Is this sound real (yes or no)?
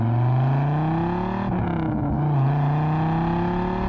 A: yes